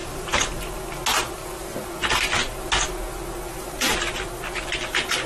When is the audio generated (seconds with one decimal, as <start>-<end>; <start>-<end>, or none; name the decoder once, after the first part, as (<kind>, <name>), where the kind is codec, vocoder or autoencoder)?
0.0-0.6 (vocoder, BigVGAN v2)